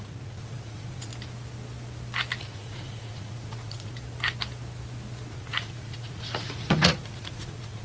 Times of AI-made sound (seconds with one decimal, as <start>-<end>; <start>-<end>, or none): 0.0-1.1; 2.4-3.9; 5.3-7.8